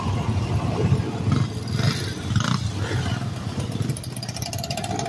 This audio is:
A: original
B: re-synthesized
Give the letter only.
A